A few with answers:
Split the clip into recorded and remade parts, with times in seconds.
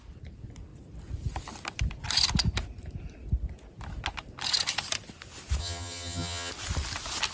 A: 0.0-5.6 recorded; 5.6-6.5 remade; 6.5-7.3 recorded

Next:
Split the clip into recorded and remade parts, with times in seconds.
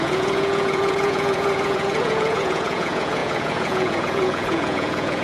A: 0.0-5.2 remade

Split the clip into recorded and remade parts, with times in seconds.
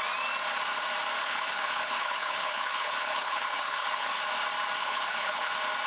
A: 0.0-1.2 recorded; 1.2-4.2 remade; 4.2-4.8 recorded; 4.8-5.5 remade; 5.5-5.9 recorded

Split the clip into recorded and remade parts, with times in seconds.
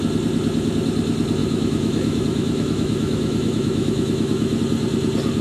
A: 0.0-1.4 recorded; 1.4-4.6 remade; 4.6-5.4 recorded